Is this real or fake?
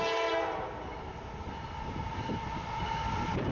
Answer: real